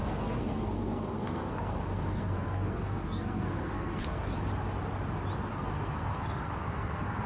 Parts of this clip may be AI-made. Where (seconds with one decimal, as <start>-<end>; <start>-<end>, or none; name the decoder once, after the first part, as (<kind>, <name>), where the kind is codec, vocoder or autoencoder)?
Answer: 0.0-4.4 (codec, SNAC); 5.5-7.3